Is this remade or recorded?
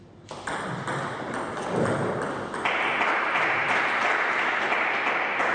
recorded